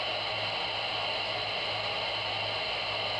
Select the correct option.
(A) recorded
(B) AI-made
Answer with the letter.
A